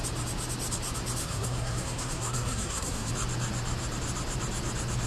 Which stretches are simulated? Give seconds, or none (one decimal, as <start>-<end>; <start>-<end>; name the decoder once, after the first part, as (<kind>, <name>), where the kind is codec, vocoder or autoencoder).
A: 1.2-3.1 (codec, SNAC)